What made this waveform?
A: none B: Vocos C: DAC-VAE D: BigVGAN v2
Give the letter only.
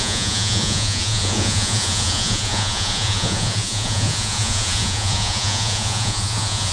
B